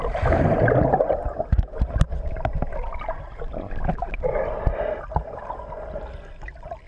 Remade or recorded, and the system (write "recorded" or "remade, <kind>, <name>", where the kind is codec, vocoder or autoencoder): recorded